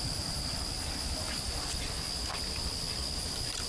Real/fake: real